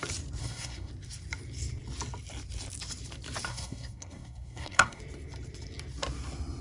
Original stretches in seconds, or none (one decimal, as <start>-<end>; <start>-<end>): 0.0-0.4; 0.9-3.5; 5.0-6.6